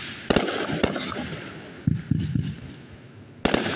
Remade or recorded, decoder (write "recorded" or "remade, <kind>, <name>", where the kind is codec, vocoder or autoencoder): recorded